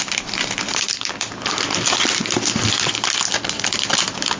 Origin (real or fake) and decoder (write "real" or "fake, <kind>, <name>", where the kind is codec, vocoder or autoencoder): real